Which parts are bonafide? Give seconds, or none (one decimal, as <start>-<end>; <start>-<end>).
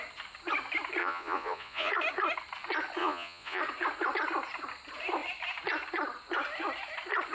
0.0-1.0; 1.9-3.0; 3.6-7.3